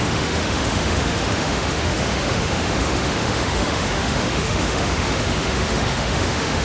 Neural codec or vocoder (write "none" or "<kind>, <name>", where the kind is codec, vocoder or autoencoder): autoencoder, DAC-VAE